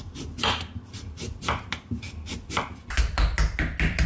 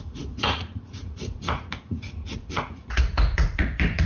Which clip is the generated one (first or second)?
second